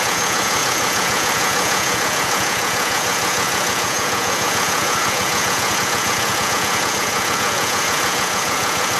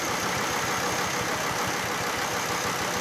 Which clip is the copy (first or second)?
first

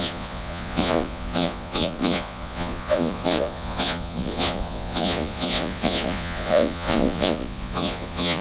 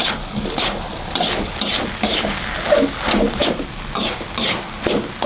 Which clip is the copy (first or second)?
first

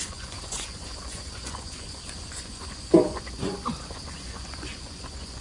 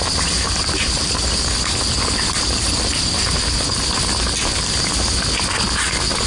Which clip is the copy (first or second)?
first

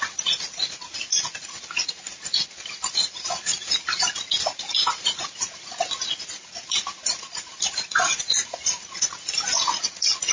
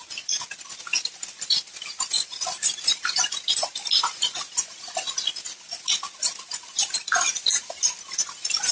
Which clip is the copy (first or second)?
first